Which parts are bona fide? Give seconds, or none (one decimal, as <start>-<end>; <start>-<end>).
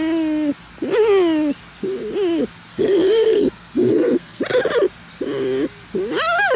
0.0-2.7; 4.4-6.6